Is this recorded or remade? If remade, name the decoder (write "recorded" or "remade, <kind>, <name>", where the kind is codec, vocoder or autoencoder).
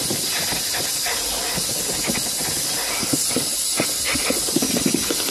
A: recorded